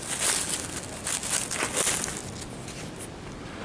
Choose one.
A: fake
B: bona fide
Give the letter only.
B